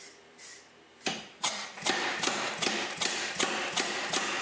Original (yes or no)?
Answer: no